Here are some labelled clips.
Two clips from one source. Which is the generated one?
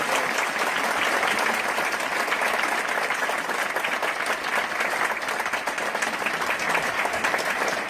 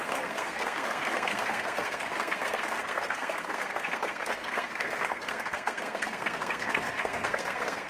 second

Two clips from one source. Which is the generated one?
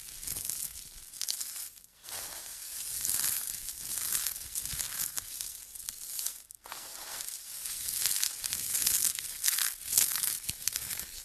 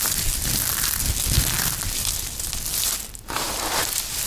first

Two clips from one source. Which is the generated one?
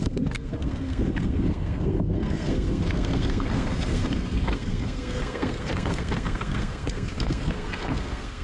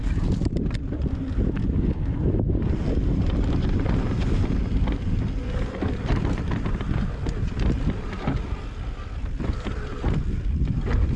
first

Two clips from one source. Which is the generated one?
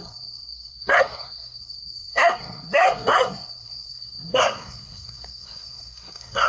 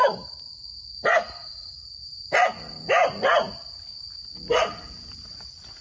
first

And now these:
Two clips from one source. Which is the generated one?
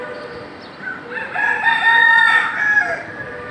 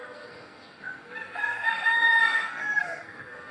second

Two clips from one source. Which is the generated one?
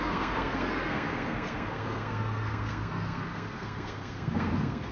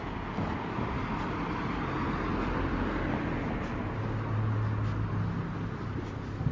first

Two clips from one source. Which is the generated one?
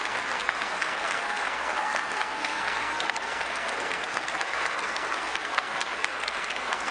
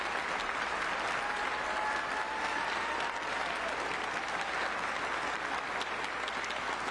first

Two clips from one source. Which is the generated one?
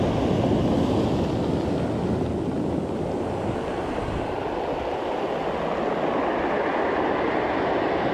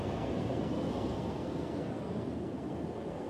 second